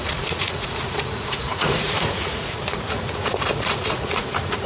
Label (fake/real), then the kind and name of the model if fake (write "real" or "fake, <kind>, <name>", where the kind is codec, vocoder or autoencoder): fake, vocoder, Vocos